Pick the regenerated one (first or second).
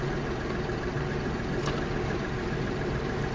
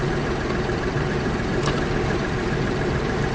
second